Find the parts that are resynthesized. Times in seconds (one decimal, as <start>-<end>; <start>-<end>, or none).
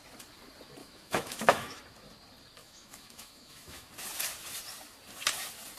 0.8-1.8; 2.6-3.9